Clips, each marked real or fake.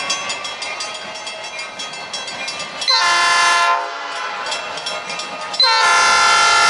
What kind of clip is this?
real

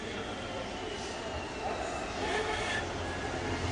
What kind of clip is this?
real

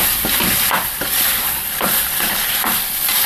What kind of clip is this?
fake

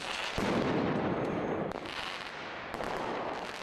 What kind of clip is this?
real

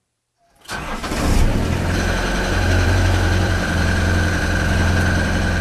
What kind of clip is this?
fake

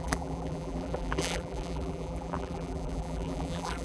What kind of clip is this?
fake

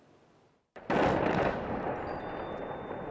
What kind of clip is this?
fake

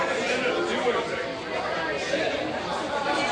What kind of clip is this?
real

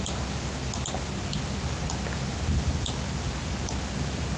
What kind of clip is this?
real